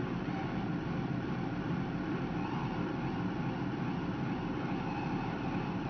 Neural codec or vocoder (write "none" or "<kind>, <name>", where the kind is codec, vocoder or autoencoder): none